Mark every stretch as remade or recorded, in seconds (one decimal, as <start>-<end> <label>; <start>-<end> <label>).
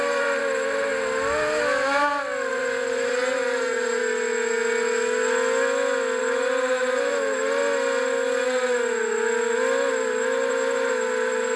0.0-0.9 remade; 0.9-2.5 recorded; 2.5-4.0 remade; 4.0-6.2 recorded; 6.2-7.6 remade; 7.6-9.9 recorded; 9.9-11.6 remade